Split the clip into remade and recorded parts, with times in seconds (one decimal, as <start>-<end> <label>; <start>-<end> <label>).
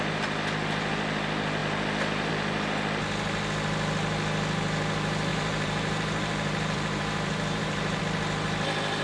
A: 0.0-5.3 recorded; 5.3-8.0 remade; 8.0-9.0 recorded